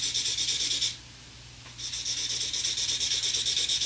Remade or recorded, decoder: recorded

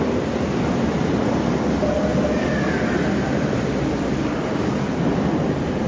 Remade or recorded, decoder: recorded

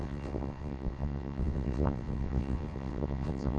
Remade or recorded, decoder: remade, vocoder, WaveNeXt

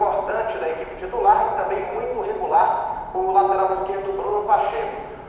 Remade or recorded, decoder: remade, vocoder, BigVGAN v2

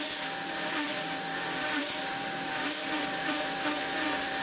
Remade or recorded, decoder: remade, vocoder, BigVGAN v2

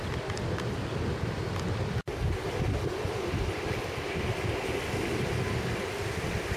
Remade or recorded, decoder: recorded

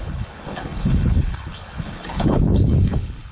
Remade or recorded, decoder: remade, codec, HILCodec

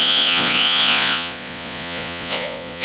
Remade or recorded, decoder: remade, vocoder, Vocos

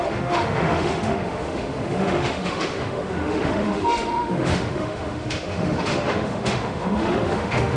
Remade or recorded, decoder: remade, autoencoder, DAC-VAE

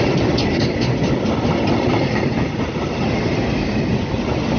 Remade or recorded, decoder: recorded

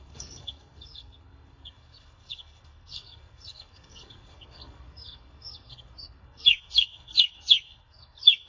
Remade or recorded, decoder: remade, codec, SNAC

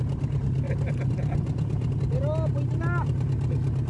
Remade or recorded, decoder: recorded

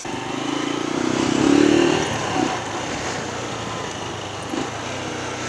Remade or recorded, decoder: recorded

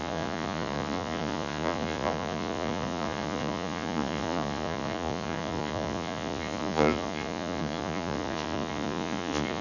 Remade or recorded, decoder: remade, vocoder, Vocos